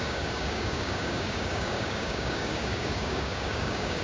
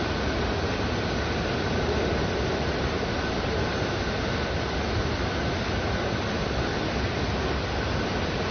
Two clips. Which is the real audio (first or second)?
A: second